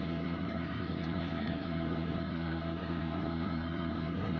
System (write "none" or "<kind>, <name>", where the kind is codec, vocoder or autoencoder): codec, SNAC